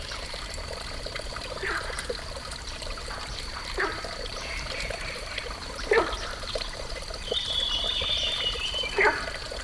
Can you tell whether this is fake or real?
fake